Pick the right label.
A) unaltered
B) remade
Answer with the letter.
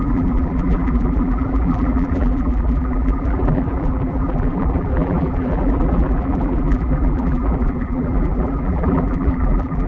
B